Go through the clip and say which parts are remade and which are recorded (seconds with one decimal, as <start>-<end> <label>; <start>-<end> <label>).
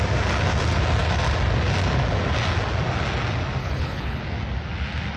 0.0-3.6 recorded; 3.6-4.2 remade; 4.2-5.2 recorded